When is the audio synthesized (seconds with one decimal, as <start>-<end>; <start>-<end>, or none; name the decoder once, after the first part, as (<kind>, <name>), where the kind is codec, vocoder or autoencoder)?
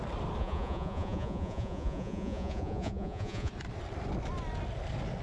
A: 0.4-3.5 (vocoder, Vocos)